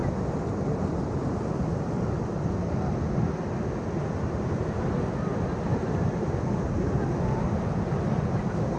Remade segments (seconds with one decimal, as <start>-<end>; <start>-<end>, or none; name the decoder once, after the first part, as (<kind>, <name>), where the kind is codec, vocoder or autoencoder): none